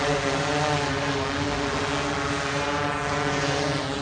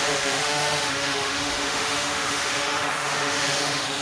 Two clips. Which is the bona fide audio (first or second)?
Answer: first